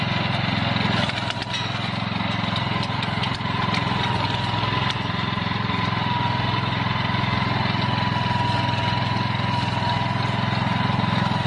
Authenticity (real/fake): real